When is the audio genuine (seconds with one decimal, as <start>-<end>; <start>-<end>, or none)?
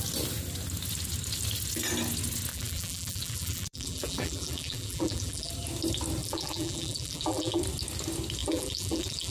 0.0-2.5; 5.5-6.2; 7.6-8.4